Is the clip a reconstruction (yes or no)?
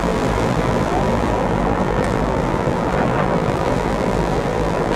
yes